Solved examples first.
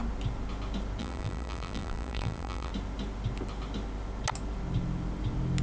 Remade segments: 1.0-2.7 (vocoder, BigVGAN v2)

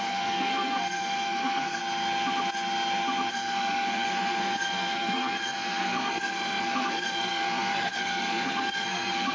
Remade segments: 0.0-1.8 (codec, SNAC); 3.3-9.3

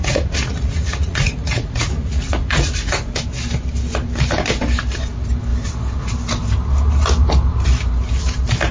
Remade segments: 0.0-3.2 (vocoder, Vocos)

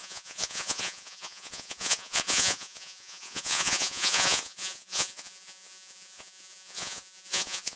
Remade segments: 0.0-7.8 (vocoder, Vocos)

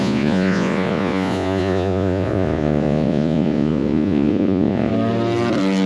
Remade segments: 0.0-4.9 (vocoder, Vocos)

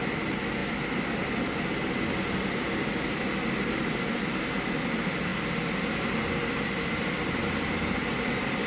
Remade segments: none

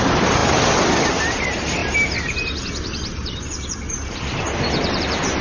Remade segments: none